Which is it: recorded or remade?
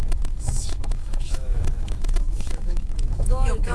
remade